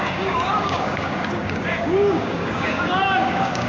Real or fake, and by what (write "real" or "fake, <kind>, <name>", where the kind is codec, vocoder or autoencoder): fake, codec, DAC